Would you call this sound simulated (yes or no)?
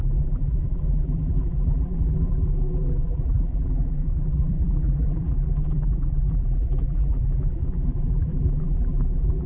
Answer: yes